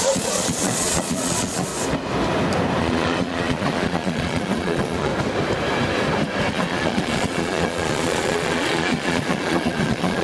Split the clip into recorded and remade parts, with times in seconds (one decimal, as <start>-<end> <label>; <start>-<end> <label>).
0.0-1.7 remade; 1.7-2.8 recorded; 2.8-5.1 remade; 5.1-6.5 recorded; 6.5-10.2 remade